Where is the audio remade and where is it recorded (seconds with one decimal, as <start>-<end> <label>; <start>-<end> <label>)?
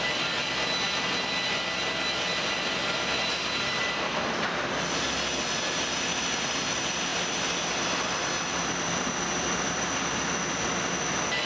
0.0-11.5 recorded